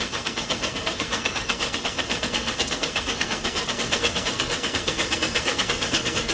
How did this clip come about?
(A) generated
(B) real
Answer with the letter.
A